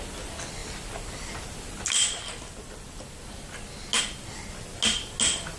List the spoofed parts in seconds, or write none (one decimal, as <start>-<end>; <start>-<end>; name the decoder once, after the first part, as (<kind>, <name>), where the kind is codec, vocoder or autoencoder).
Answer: none